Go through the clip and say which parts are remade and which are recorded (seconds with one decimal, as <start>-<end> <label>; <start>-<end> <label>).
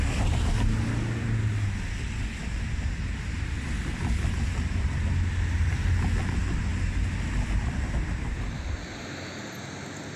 0.0-10.2 recorded